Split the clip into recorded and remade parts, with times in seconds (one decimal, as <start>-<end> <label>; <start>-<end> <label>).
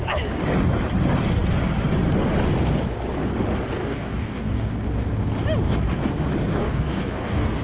0.0-3.8 recorded; 3.8-4.7 remade; 4.7-6.6 recorded; 6.6-7.6 remade